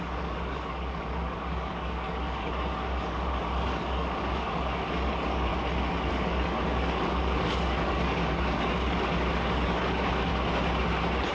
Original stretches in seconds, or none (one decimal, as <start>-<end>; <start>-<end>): 5.5-6.1; 10.3-11.3